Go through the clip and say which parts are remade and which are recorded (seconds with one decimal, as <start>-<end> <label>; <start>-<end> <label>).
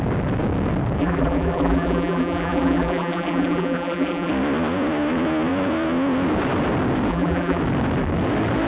0.0-1.0 recorded; 1.0-4.3 remade; 4.3-7.1 recorded; 7.1-7.6 remade; 7.6-8.7 recorded